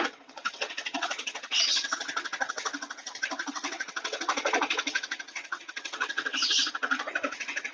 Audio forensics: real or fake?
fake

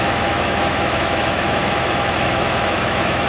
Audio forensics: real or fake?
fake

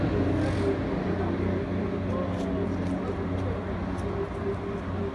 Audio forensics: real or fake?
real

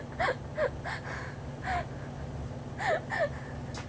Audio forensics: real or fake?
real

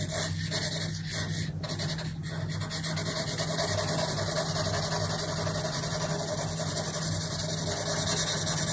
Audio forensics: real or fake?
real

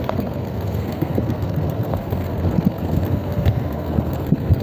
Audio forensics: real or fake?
fake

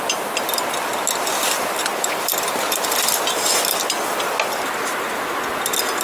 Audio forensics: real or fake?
real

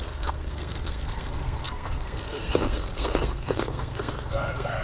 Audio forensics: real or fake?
fake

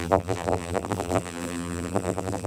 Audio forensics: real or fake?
fake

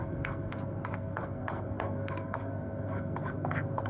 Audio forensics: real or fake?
fake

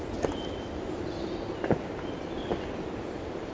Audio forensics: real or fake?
real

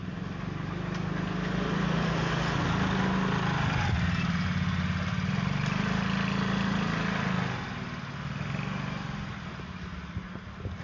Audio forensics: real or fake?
real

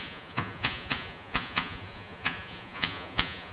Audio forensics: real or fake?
fake